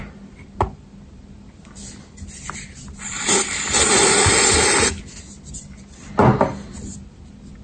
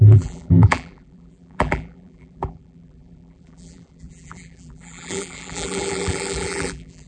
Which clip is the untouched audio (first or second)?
first